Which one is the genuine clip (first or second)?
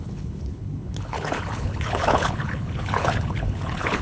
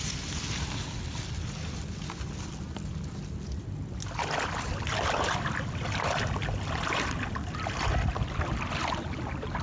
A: second